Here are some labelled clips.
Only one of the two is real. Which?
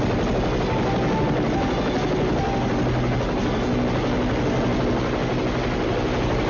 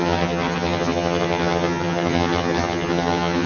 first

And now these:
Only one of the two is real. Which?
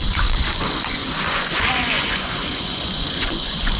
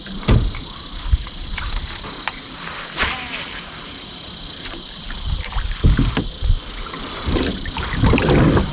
second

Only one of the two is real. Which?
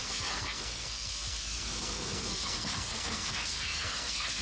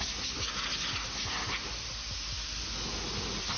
second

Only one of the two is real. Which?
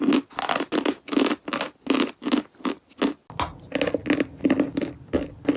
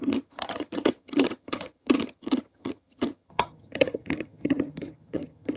first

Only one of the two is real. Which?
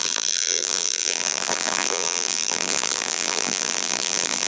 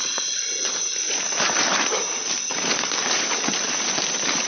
second